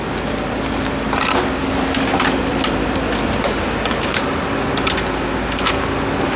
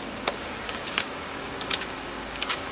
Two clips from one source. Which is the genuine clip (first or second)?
first